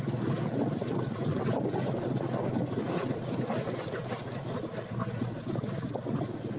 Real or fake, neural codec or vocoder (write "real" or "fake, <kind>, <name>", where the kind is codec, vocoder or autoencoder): real